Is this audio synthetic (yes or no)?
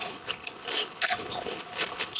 yes